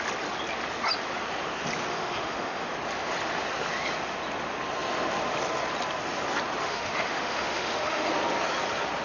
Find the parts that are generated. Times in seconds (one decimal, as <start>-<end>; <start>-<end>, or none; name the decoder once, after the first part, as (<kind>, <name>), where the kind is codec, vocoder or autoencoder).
1.9-2.7 (autoencoder, DAC-VAE); 6.6-8.1